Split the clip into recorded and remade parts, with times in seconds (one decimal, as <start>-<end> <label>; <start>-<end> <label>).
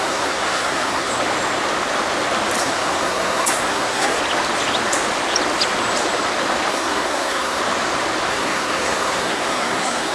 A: 0.0-1.1 remade; 1.1-2.6 recorded; 2.6-4.2 remade; 4.2-6.7 recorded; 6.7-7.6 remade; 7.6-8.3 recorded; 8.3-10.1 remade